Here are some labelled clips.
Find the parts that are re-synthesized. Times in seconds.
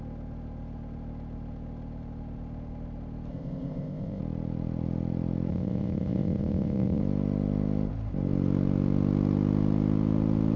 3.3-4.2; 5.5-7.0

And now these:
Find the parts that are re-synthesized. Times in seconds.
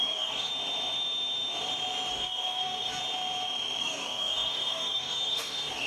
0.0-0.5; 2.1-3.0; 3.8-5.9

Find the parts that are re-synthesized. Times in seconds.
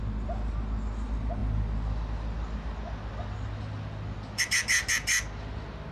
none